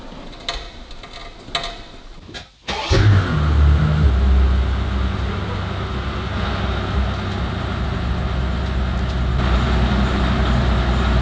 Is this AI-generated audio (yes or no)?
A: no